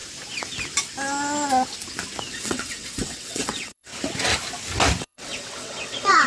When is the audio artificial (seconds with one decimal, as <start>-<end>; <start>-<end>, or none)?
2.3-3.9; 5.0-6.3